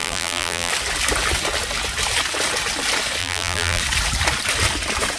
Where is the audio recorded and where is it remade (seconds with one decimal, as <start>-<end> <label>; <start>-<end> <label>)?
0.0-0.7 remade; 0.7-3.2 recorded; 3.2-3.8 remade; 3.8-5.2 recorded